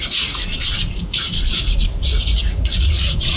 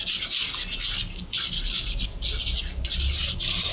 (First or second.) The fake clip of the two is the first